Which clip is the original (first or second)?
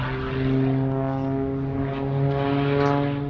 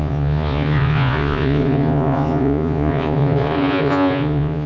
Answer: first